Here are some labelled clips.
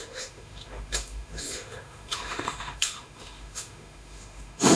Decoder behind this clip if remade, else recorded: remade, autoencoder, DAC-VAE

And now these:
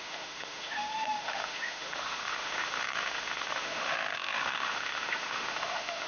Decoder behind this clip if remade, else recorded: remade, autoencoder, DAC-VAE